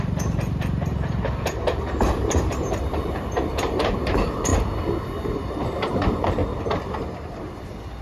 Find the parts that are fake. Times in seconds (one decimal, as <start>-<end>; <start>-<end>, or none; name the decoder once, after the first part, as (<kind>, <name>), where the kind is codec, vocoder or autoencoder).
0.0-0.9 (vocoder, BigVGAN v2); 1.7-4.5; 5.9-6.4; 7.0-8.0